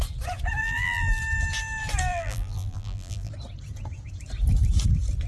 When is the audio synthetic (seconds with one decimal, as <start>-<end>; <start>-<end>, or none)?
0.6-1.2; 2.1-3.3

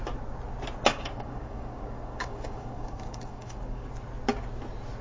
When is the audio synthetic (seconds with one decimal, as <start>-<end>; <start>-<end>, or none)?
0.9-3.9

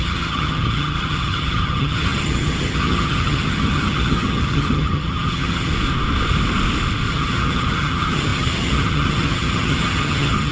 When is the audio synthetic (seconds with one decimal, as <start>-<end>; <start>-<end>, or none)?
0.0-5.7; 7.1-10.5

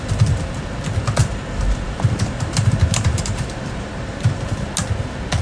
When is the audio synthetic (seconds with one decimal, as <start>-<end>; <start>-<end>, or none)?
1.2-4.4

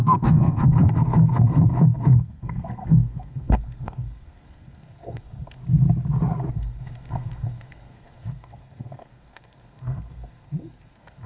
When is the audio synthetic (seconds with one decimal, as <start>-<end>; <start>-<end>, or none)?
0.0-5.6; 6.5-11.3